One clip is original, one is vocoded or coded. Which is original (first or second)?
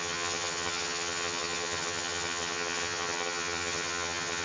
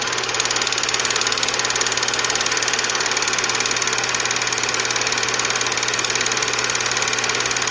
second